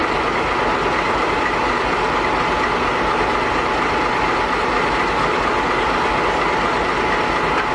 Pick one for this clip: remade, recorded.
recorded